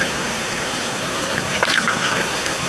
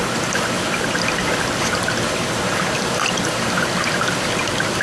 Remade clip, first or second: first